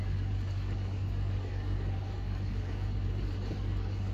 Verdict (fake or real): fake